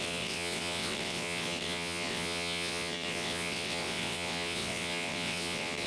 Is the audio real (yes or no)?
no